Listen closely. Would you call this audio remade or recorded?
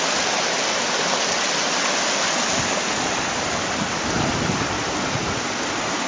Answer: recorded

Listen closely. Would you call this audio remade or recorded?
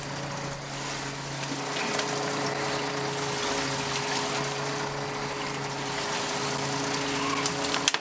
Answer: recorded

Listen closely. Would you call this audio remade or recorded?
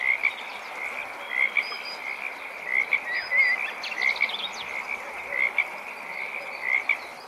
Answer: recorded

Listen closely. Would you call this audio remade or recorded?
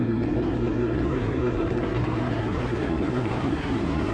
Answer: remade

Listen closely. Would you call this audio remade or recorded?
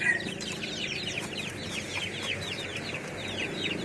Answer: remade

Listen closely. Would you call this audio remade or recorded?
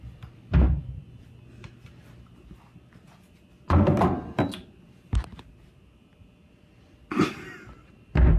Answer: recorded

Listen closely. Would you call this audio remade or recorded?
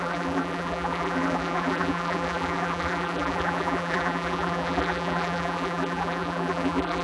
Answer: remade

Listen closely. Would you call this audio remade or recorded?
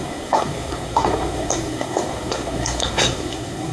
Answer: remade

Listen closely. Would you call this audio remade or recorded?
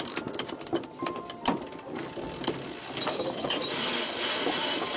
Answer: recorded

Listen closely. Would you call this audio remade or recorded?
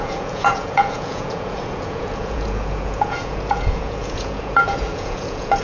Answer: remade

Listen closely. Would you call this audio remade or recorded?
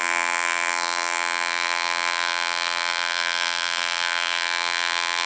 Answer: remade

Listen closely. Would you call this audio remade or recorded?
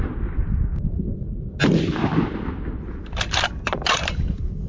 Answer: recorded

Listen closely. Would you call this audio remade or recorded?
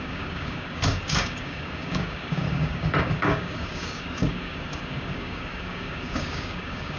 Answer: remade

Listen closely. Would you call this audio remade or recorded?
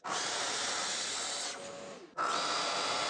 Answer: recorded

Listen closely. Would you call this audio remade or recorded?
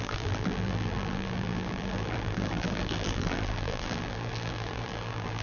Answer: remade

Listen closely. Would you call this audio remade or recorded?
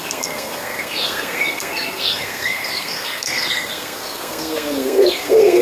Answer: remade